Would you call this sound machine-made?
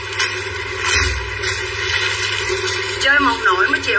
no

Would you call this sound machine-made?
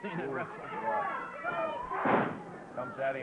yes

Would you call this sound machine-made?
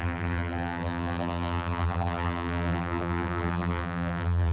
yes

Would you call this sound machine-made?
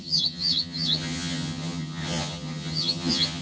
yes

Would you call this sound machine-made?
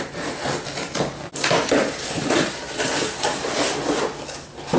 no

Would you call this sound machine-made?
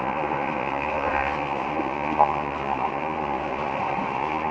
yes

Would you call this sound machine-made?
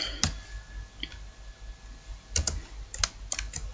no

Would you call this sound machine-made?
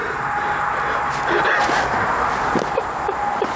no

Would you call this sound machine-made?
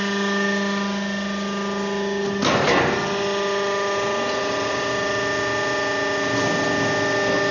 no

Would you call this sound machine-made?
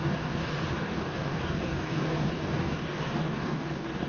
yes